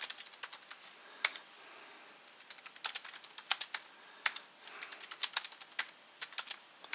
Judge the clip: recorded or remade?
recorded